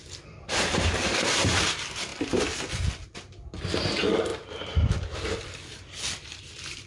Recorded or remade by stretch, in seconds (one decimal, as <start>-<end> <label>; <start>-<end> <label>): 0.0-6.9 recorded